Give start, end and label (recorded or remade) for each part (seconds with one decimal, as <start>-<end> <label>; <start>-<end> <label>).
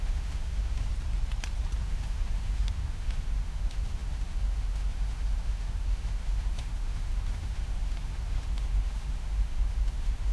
0.0-0.9 remade; 0.9-1.8 recorded; 1.8-10.3 remade